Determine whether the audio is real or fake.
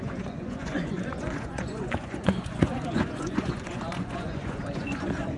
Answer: fake